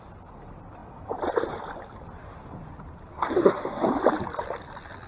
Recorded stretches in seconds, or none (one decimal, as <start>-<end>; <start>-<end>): 0.0-3.1; 3.9-5.1